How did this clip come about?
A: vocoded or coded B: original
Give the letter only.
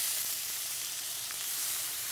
A